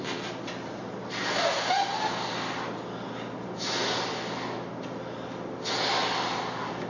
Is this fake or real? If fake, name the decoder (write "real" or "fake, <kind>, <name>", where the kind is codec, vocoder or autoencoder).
real